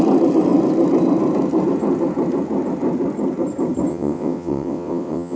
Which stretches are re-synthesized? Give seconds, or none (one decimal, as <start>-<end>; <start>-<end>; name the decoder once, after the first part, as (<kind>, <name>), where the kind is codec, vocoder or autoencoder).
3.9-5.4 (vocoder, WaveNeXt)